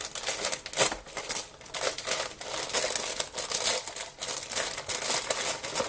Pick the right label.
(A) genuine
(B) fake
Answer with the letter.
A